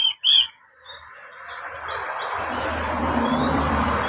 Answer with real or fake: fake